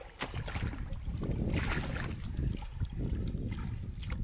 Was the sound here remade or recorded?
recorded